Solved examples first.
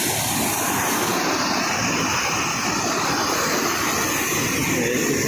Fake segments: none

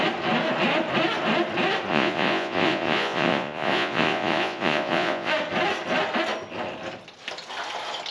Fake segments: 1.9-5.3 (vocoder, Vocos)

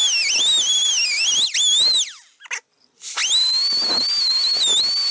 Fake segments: none

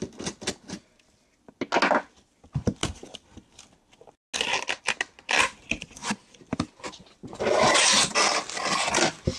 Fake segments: none

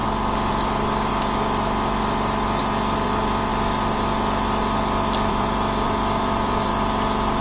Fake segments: 0.5-1.1 (vocoder, BigVGAN v2); 2.6-3.5; 5.3-6.7